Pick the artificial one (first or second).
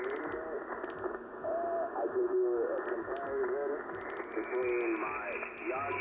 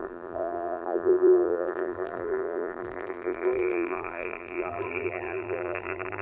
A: second